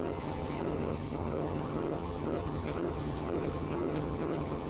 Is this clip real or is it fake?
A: fake